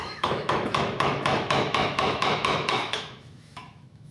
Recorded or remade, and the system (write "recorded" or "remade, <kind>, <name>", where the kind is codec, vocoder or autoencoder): remade, autoencoder, DAC-VAE